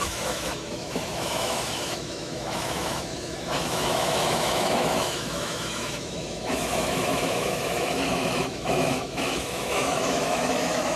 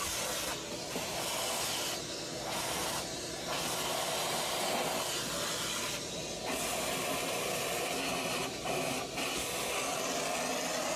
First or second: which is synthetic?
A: first